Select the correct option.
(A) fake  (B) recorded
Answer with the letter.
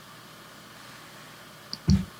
B